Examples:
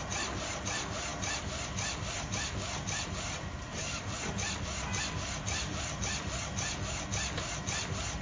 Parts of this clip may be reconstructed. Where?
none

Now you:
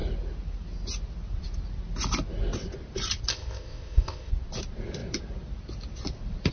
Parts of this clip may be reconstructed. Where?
3.3-4.3 (codec, ZipCodec)

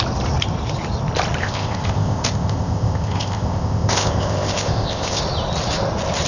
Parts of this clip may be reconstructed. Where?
1.4-5.2 (codec, ZipCodec)